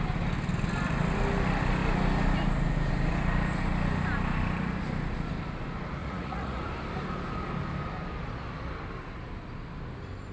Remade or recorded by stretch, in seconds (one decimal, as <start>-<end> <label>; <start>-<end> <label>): 0.0-6.0 recorded; 6.0-6.6 remade; 6.6-10.3 recorded